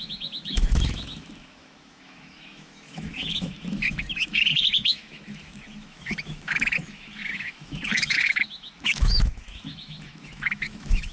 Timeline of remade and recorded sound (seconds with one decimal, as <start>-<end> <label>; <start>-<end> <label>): 0.0-11.1 remade